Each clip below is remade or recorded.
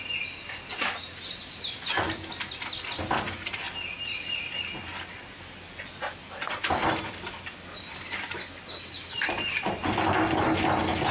recorded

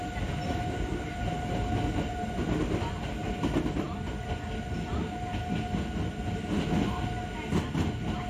recorded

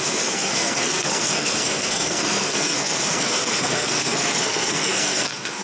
remade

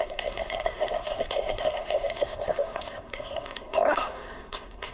remade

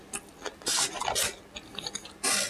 recorded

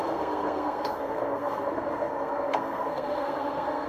remade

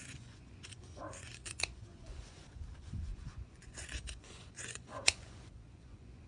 remade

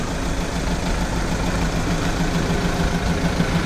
recorded